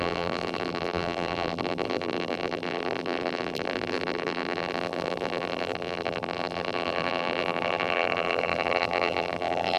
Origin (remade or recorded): remade